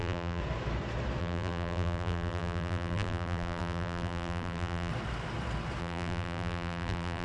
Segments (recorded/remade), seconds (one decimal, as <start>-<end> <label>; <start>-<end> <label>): 0.0-0.4 remade; 0.4-1.2 recorded; 1.2-4.9 remade; 4.9-5.8 recorded; 5.8-7.2 remade